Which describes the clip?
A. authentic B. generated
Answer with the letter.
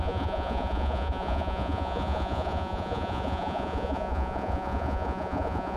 B